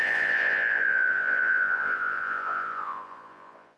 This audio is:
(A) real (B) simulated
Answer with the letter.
B